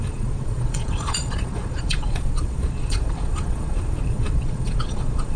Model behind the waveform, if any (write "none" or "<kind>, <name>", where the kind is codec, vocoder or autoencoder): vocoder, Vocos